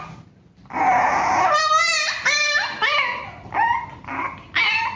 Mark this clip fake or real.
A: real